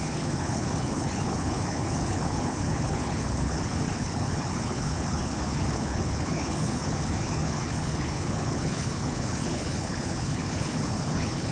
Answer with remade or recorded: remade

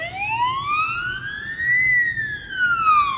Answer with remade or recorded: recorded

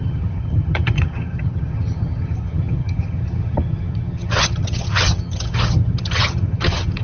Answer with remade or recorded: remade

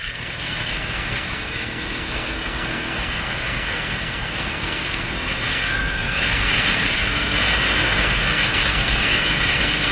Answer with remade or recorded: remade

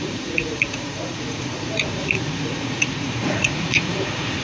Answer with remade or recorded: remade